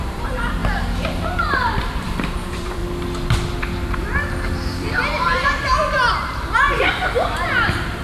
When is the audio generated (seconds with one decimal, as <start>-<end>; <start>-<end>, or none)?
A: 0.0-0.6; 1.8-2.8; 6.1-8.0